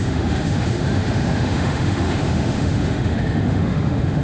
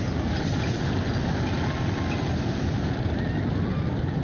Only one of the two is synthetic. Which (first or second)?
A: first